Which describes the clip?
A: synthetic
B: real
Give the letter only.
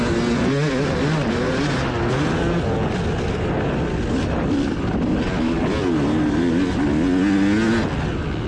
B